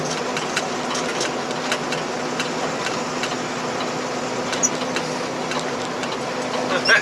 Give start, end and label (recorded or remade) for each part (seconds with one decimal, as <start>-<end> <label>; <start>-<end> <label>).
0.0-7.0 recorded